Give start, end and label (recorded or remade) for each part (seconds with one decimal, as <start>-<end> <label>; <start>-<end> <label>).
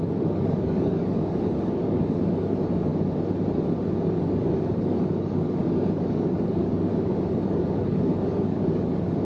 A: 0.0-2.9 remade; 2.9-4.2 recorded; 4.2-9.2 remade